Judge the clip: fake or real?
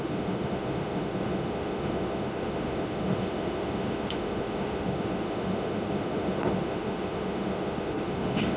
fake